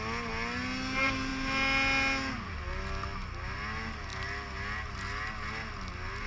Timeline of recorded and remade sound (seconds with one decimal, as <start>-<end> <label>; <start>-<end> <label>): 0.0-6.3 recorded